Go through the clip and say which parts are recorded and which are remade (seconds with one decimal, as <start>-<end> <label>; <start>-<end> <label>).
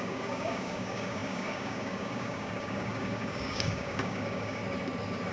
0.0-4.6 remade; 4.6-5.3 recorded